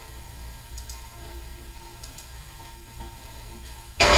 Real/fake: fake